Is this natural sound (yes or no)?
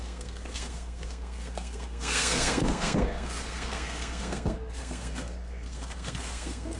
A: no